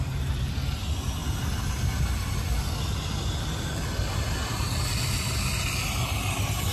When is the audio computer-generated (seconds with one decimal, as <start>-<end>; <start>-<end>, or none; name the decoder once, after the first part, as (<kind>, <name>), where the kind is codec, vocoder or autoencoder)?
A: none